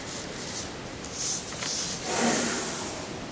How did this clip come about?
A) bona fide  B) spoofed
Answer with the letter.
A